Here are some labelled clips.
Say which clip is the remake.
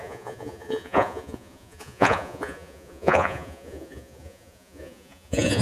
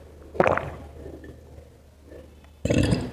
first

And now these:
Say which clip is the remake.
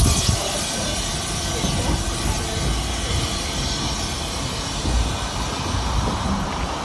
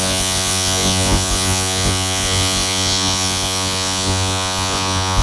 second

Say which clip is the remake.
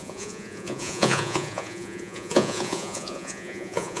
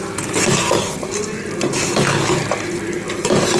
first